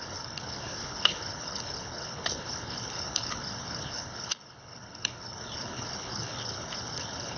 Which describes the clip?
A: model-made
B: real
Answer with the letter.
A